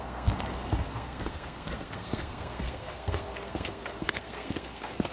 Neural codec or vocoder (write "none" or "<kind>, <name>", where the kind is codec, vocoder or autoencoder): codec, SNAC